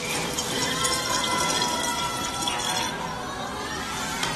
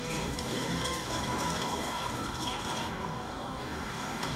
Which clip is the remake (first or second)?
second